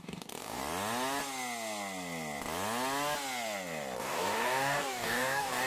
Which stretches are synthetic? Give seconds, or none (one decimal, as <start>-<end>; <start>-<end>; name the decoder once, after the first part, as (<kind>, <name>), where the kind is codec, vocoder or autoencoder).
0.0-0.6 (codec, DAC); 4.0-5.7